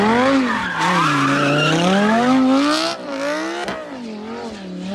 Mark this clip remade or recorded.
recorded